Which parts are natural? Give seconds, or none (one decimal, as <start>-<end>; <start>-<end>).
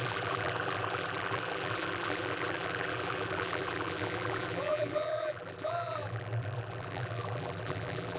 none